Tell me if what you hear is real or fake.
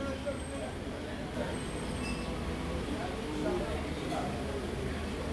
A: real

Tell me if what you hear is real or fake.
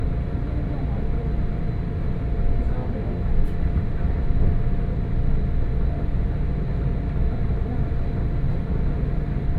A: real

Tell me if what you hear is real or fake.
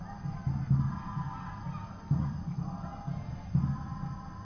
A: real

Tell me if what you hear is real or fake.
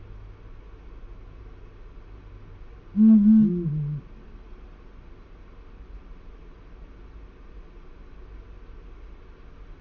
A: real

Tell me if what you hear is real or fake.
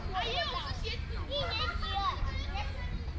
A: real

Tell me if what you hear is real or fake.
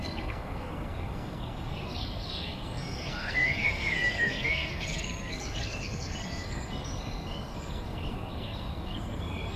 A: fake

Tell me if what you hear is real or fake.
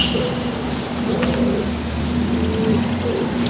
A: real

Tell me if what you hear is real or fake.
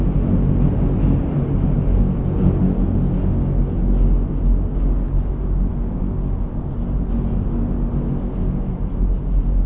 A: real